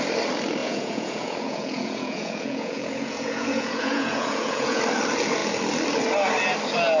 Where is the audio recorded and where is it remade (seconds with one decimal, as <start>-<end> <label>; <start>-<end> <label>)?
0.0-0.6 recorded; 0.6-4.8 remade; 4.8-7.0 recorded